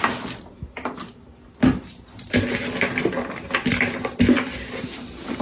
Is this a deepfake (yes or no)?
no